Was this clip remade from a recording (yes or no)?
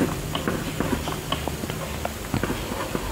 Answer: no